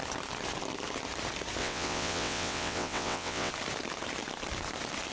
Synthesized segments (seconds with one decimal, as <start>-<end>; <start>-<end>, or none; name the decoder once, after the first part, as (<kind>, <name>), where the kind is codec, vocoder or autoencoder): 1.6-3.5 (vocoder, WaveNeXt)